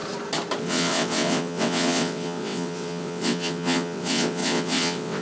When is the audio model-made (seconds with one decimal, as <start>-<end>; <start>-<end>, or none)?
0.6-5.2